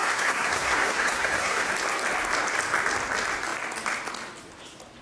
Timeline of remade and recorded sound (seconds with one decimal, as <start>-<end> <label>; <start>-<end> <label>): 0.0-1.7 remade; 1.7-5.0 recorded